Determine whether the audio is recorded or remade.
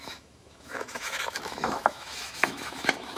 remade